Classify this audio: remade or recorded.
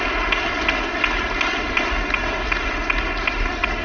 recorded